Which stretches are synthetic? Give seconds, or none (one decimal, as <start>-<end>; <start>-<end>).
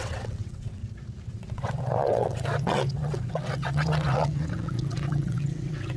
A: 0.0-0.8; 1.3-6.0